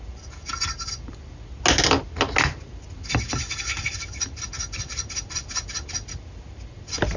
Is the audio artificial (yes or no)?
no